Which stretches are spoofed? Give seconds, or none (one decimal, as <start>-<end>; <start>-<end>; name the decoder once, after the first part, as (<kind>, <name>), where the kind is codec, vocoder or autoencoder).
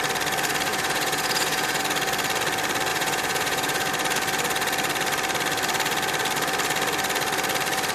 0.7-1.8 (vocoder, Vocos); 2.9-3.9